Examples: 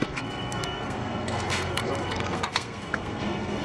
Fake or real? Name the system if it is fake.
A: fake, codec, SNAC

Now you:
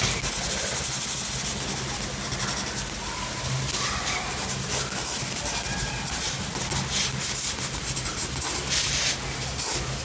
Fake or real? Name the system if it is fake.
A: real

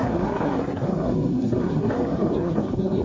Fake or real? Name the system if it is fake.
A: fake, codec, SNAC